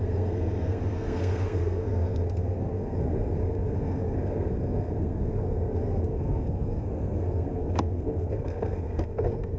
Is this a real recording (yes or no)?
no